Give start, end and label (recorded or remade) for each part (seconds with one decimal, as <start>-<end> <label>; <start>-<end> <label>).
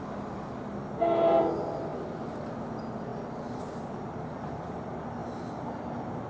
0.0-6.3 recorded